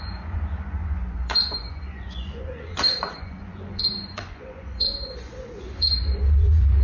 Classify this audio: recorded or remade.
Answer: remade